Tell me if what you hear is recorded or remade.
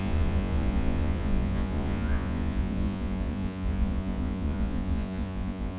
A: remade